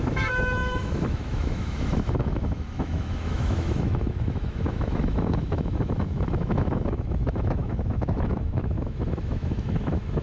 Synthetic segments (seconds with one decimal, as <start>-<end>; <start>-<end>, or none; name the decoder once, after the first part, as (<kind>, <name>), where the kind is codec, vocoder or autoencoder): 0.0-10.2 (autoencoder, DAC-VAE)